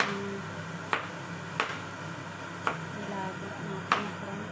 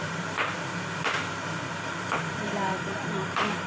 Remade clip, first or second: second